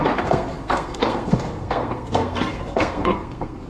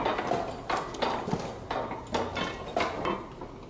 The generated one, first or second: first